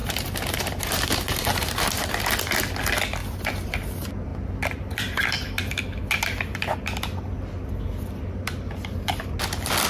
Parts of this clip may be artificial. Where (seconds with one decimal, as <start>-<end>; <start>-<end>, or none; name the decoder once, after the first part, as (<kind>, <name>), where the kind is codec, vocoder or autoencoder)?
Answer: 0.0-2.3 (vocoder, BigVGAN v2); 3.2-3.9; 4.3-5.2